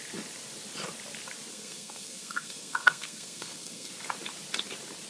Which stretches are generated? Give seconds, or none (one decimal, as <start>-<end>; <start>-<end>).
1.5-3.9